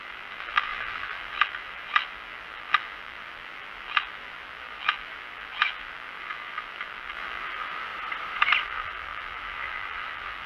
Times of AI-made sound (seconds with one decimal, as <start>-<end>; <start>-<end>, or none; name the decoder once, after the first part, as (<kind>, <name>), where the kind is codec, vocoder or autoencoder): 0.0-7.9 (vocoder, BigVGAN v2); 8.6-10.5